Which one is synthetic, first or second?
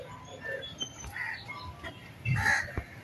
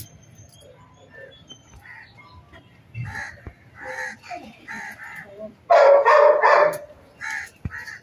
first